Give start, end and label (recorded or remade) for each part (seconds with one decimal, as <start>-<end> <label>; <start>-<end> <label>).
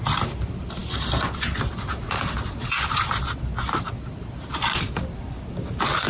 0.0-6.1 recorded